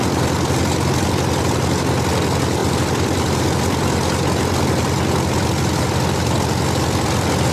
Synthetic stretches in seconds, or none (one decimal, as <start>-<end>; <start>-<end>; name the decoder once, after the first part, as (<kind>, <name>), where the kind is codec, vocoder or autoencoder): none